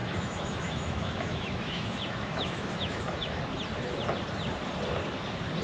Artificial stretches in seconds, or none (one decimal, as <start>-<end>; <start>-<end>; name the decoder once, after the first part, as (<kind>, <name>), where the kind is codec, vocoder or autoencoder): 0.0-3.4 (autoencoder, DAC-VAE)